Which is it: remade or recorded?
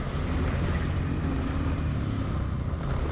recorded